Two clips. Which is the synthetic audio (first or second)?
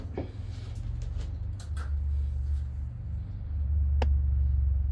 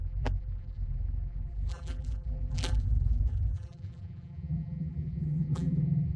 second